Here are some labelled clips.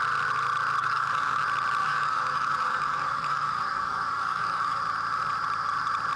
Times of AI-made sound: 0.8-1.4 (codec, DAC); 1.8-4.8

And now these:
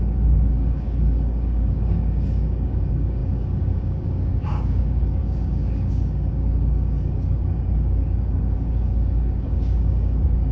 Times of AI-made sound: 0.0-10.5 (codec, DAC)

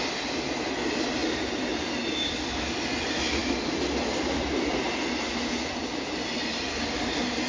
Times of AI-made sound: none

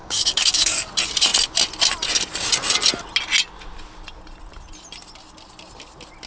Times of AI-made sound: 0.0-0.9 (codec, DAC)